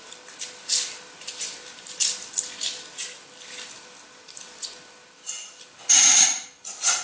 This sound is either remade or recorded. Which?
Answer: recorded